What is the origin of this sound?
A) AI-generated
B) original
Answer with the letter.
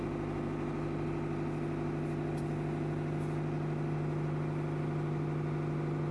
B